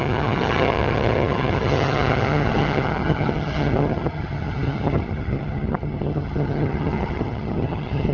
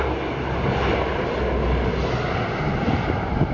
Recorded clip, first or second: second